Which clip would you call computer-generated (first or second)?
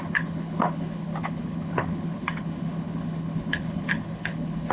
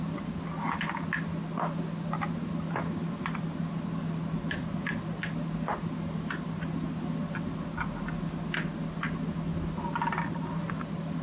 first